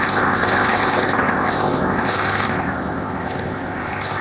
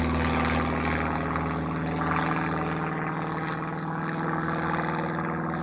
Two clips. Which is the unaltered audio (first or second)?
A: second